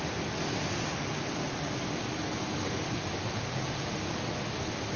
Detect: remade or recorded recorded